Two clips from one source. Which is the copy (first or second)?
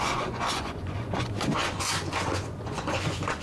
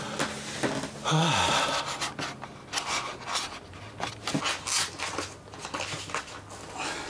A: first